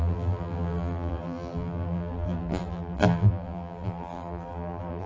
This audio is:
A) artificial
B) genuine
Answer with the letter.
A